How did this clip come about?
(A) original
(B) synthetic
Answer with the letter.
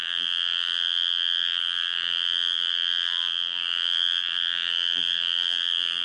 B